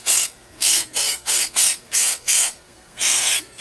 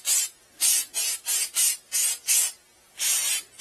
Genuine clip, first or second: second